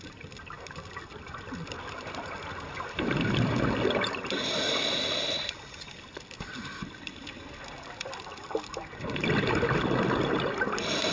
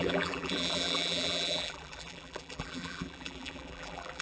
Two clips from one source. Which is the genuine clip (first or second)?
first